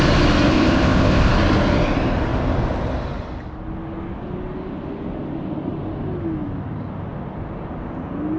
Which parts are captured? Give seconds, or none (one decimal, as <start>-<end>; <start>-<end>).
0.0-0.5; 1.3-8.4